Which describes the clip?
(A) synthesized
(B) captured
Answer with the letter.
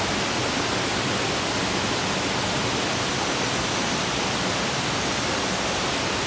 B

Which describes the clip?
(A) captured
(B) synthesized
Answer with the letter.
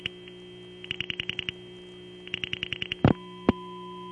A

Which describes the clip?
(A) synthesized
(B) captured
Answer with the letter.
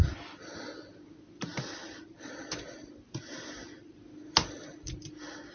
A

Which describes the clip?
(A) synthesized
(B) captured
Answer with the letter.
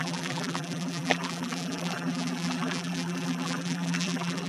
A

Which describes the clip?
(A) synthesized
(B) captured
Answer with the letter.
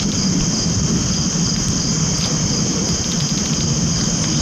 B